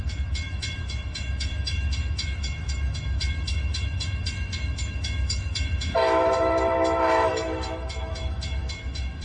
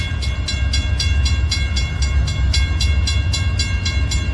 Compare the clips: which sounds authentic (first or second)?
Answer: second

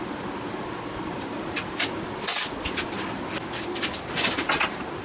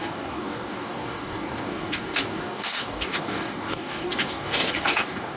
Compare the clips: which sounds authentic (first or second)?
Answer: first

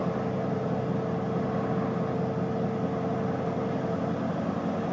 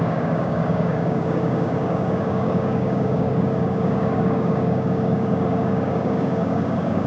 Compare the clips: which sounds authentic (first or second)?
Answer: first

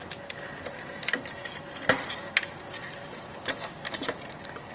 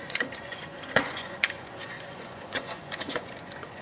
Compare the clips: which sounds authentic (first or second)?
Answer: first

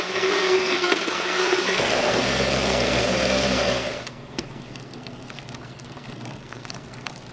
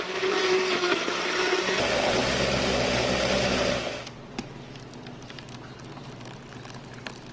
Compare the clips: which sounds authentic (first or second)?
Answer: second